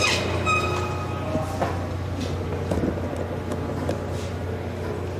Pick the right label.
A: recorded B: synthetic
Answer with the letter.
A